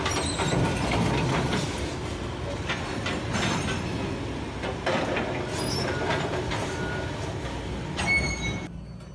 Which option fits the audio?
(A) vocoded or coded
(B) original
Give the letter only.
B